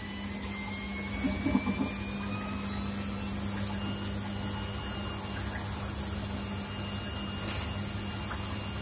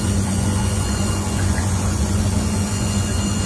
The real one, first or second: first